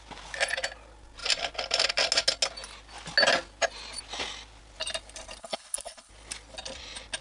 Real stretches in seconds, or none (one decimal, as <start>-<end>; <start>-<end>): 0.0-5.4; 6.1-7.2